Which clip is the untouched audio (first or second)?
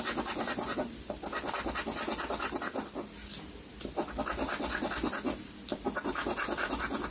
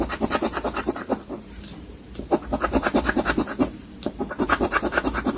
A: first